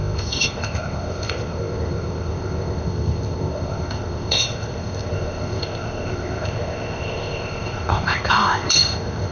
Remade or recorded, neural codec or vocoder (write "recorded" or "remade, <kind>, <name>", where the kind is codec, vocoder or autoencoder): remade, codec, ZipCodec